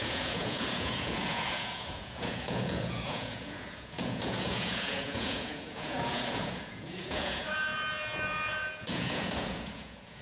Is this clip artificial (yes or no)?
yes